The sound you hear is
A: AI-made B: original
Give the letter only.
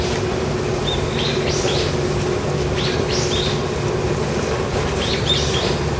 B